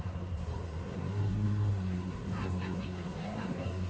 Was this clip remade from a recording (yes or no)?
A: yes